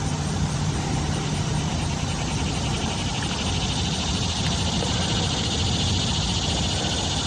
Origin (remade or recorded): recorded